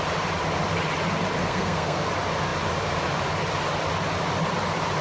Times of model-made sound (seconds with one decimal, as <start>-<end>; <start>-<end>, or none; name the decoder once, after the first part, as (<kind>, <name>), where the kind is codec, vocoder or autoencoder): 1.4-2.1 (codec, SNAC)